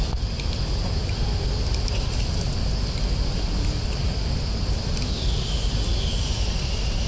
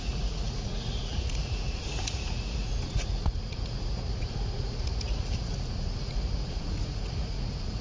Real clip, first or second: first